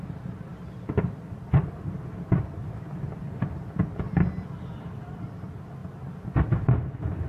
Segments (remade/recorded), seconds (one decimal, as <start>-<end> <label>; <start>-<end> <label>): 0.0-0.5 recorded; 0.5-1.8 remade; 1.8-2.6 recorded; 2.6-3.8 remade; 3.8-5.8 recorded; 5.8-7.3 remade